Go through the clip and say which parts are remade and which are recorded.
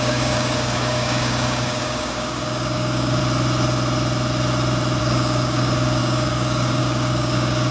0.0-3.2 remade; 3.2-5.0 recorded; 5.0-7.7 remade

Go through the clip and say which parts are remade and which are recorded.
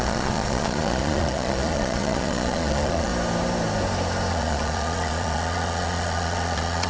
0.0-3.1 remade; 3.1-4.3 recorded; 4.3-6.9 remade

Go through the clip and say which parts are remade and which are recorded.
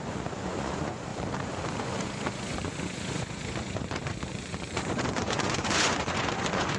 0.0-1.1 remade; 1.1-1.8 recorded; 1.8-6.8 remade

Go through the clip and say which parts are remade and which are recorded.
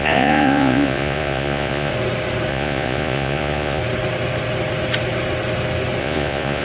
0.0-1.9 remade; 1.9-2.5 recorded; 2.5-3.8 remade; 3.8-6.0 recorded; 6.0-6.6 remade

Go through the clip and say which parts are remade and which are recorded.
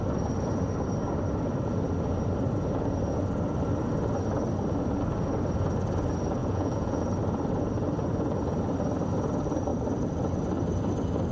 0.0-6.4 recorded; 6.4-7.0 remade; 7.0-11.3 recorded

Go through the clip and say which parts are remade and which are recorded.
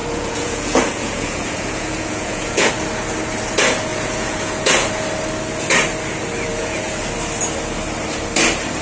0.0-2.7 remade; 2.7-3.9 recorded; 3.9-4.9 remade; 4.9-6.5 recorded; 6.5-7.0 remade; 7.0-8.8 recorded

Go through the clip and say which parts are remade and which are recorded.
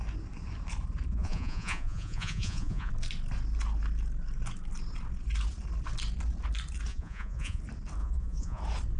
0.0-1.1 recorded; 1.1-2.9 remade; 2.9-6.9 recorded; 6.9-7.6 remade; 7.6-8.0 recorded; 8.0-8.6 remade; 8.6-9.0 recorded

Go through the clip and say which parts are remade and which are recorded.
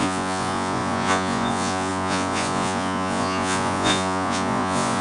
0.0-5.0 remade